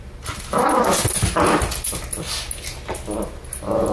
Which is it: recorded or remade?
recorded